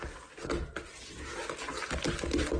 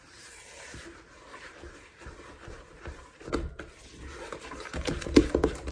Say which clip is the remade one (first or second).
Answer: second